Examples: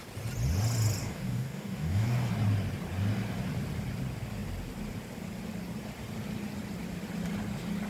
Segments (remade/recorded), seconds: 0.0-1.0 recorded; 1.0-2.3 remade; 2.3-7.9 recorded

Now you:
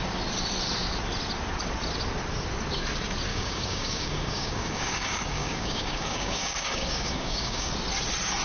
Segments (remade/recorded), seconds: 0.0-3.3 recorded; 3.3-7.7 remade; 7.7-8.4 recorded

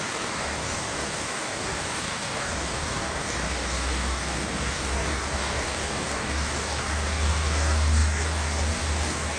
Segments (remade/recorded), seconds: 0.0-9.4 remade

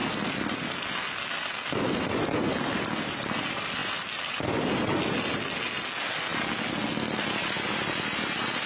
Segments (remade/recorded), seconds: 0.0-8.7 recorded